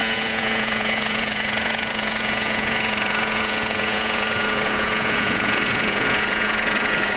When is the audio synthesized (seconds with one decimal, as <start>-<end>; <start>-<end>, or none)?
0.0-7.2